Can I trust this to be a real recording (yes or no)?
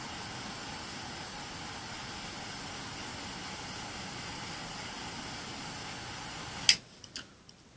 yes